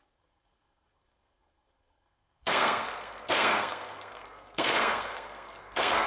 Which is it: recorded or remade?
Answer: remade